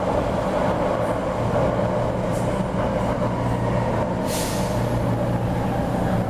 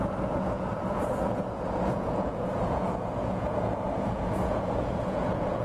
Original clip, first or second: first